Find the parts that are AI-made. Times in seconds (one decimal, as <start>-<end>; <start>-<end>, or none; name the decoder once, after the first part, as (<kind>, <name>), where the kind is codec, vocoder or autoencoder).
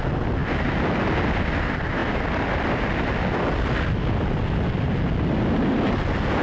none